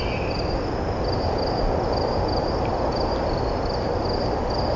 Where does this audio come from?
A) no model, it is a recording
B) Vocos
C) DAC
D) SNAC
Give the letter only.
A